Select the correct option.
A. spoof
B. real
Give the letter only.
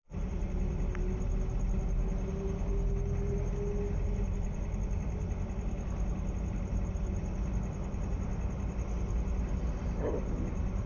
B